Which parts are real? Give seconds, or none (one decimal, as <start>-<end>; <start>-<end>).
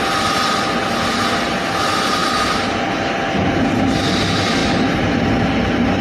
0.0-2.2; 3.8-4.6; 5.2-6.0